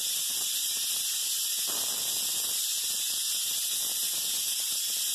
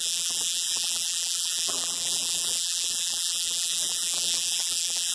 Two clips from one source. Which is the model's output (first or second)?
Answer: second